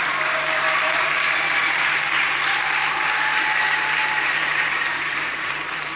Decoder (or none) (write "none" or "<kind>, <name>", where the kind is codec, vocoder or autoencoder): vocoder, BigVGAN v2